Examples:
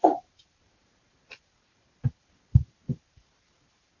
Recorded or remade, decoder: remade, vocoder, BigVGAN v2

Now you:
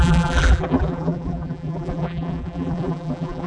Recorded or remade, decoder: remade, vocoder, BigVGAN v2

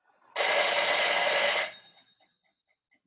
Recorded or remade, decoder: recorded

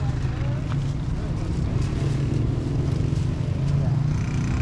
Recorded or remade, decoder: recorded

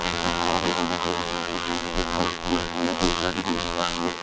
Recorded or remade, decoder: remade, vocoder, BigVGAN v2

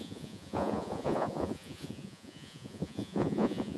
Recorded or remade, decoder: remade, vocoder, Vocos